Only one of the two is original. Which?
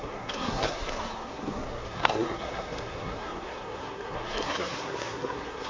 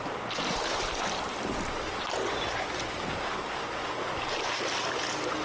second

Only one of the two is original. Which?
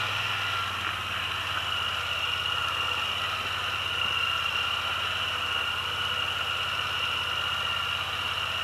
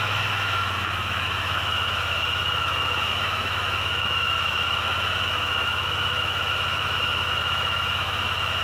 first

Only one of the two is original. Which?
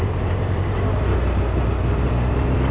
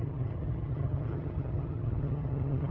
first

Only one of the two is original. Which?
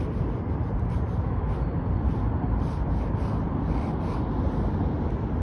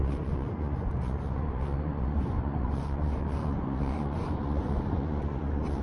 first